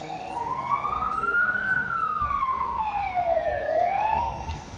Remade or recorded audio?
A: remade